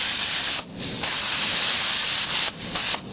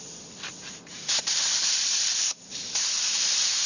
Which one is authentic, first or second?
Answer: first